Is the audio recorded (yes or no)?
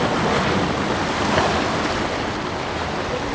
yes